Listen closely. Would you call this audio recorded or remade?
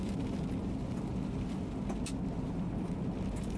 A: recorded